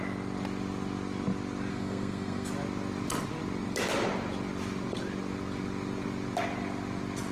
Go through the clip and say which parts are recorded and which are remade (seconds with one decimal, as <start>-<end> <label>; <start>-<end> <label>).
0.0-1.7 recorded; 1.7-2.5 remade; 2.5-7.3 recorded